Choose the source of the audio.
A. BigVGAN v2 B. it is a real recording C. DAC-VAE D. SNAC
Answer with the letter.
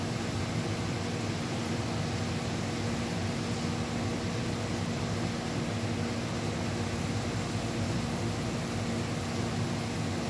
B